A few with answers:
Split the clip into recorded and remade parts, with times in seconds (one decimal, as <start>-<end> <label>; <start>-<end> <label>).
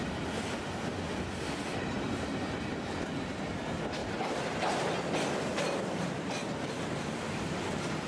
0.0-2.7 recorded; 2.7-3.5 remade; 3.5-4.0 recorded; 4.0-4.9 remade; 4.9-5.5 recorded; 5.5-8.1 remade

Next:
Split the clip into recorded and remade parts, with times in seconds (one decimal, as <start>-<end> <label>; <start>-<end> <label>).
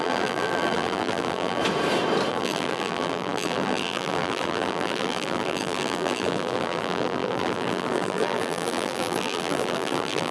0.0-1.6 remade; 1.6-2.3 recorded; 2.3-10.3 remade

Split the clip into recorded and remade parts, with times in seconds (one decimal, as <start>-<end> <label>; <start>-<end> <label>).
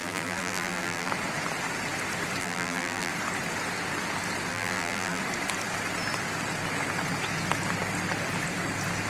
0.0-1.1 remade; 1.1-2.4 recorded; 2.4-3.1 remade; 3.1-4.5 recorded; 4.5-5.2 remade; 5.2-9.1 recorded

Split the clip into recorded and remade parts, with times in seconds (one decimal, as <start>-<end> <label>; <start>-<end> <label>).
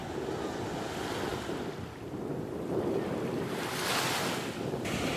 0.0-0.5 remade; 0.5-5.2 recorded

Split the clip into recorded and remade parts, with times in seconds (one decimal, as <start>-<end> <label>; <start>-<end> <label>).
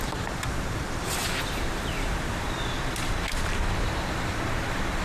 0.0-1.2 remade; 1.2-4.2 recorded; 4.2-5.0 remade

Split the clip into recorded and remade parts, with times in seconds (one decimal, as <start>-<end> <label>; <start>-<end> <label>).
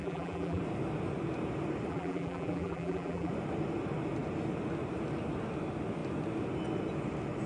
0.0-0.6 remade; 0.6-1.9 recorded; 1.9-3.3 remade; 3.3-7.5 recorded